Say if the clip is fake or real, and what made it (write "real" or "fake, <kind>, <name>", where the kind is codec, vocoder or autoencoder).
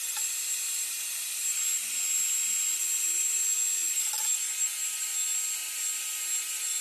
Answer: real